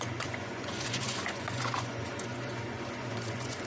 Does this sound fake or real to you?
fake